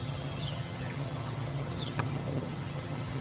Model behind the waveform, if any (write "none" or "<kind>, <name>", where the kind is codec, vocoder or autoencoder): vocoder, HiFi-GAN